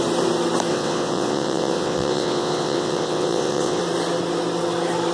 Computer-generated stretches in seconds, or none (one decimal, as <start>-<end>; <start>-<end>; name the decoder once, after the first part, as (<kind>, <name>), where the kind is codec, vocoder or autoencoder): 0.7-3.8 (vocoder, WaveNeXt)

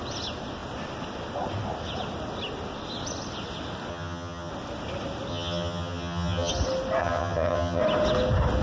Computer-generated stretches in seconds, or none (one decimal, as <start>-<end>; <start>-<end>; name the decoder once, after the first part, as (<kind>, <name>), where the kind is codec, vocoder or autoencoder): 3.9-4.5 (vocoder, HiFi-GAN); 5.3-6.5; 7.0-7.8

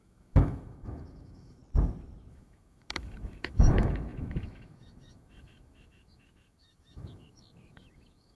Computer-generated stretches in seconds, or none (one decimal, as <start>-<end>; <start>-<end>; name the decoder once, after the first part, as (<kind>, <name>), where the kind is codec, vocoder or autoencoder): 0.0-1.6 (autoencoder, DAC-VAE); 2.3-8.3

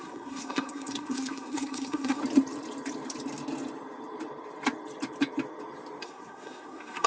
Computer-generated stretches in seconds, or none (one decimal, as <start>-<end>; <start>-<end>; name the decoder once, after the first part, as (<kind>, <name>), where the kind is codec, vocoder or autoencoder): 0.0-2.2 (codec, SNAC); 6.0-7.1

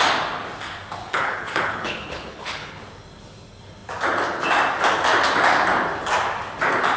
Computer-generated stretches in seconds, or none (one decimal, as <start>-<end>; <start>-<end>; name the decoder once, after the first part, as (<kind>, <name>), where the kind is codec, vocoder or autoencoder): 1.0-2.8 (codec, HILCodec)